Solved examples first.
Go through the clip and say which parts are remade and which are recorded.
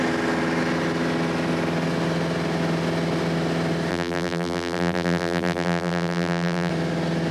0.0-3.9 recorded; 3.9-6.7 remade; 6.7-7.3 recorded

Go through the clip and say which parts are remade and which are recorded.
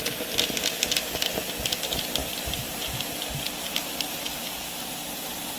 0.0-2.2 recorded; 2.2-5.6 remade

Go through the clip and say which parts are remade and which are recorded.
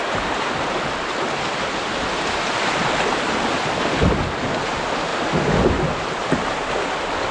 0.0-7.3 recorded